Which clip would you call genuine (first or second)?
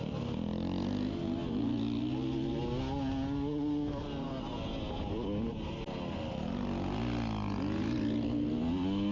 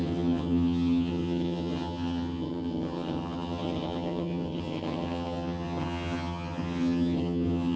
first